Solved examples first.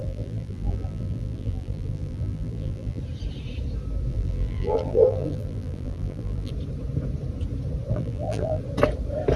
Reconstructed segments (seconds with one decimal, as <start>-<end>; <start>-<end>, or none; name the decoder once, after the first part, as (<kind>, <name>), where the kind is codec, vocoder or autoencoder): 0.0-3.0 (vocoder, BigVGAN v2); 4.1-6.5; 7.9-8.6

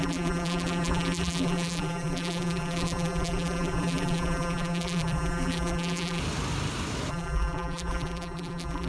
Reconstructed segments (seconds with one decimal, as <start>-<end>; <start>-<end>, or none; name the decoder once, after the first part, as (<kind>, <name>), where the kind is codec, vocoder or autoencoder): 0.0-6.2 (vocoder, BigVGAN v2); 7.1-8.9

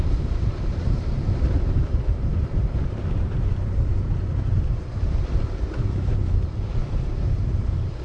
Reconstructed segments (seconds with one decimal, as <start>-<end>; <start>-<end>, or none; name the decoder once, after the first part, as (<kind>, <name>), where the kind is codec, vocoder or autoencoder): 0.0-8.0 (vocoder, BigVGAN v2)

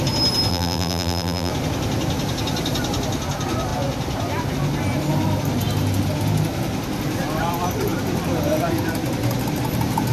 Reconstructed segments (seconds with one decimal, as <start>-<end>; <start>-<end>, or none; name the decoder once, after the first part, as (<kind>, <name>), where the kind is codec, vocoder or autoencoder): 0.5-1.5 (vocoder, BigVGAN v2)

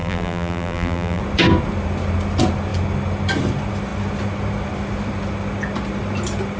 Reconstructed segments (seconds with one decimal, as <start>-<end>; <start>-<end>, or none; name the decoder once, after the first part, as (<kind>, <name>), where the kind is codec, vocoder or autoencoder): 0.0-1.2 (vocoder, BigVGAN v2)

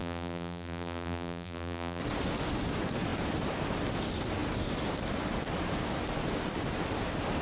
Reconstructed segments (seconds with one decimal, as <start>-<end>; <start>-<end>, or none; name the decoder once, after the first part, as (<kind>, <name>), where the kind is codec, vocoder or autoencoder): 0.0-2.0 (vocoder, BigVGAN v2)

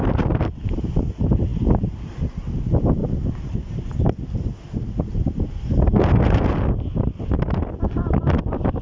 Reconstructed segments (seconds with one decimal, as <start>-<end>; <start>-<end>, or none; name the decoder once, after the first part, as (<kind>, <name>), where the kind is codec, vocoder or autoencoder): none